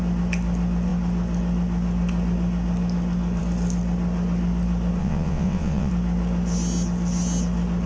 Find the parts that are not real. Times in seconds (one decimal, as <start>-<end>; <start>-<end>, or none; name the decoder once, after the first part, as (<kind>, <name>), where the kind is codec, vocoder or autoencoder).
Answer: 5.0-5.9 (vocoder, WaveNeXt)